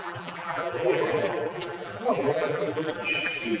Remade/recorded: remade